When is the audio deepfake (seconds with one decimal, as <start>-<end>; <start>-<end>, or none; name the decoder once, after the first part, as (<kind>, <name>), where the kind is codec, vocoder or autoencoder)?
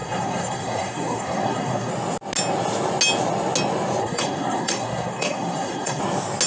0.0-1.9 (codec, SNAC); 4.0-6.0